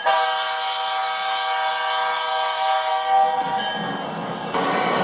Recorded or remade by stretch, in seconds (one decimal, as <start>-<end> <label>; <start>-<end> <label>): 0.0-5.0 recorded